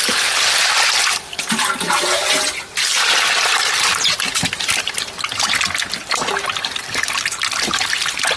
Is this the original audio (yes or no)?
yes